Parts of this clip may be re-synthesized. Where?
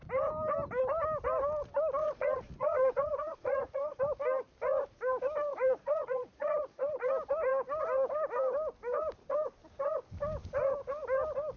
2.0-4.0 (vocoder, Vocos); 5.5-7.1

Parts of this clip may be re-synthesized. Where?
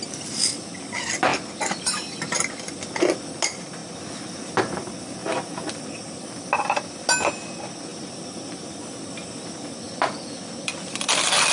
1.3-2.7 (vocoder, BigVGAN v2); 3.8-4.6; 5.2-5.8; 7.9-8.6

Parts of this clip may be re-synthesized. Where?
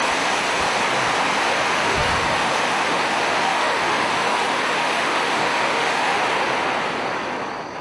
1.5-6.2 (autoencoder, DAC-VAE)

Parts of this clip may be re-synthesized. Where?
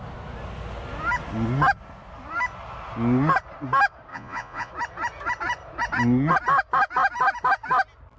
4.1-4.7 (vocoder, Vocos)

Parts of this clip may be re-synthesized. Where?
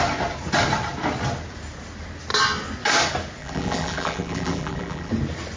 3.4-5.1 (vocoder, BigVGAN v2)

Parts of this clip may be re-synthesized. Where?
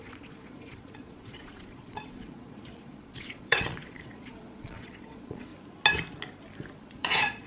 0.0-5.5 (vocoder, Vocos); 6.9-7.5